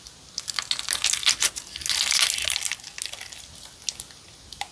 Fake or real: real